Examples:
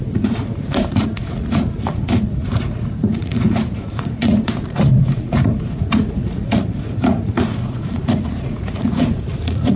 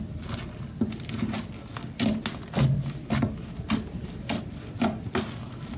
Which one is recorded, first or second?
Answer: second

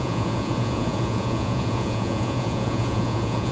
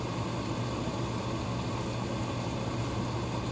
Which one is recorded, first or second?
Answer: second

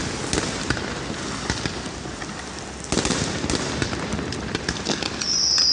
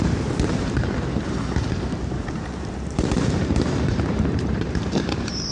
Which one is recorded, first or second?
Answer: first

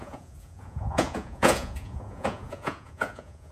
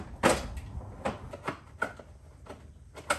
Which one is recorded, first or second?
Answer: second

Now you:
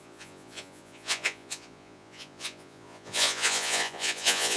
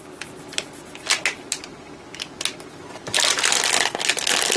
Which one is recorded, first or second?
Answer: second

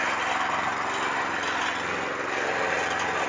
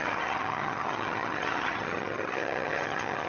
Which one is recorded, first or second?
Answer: first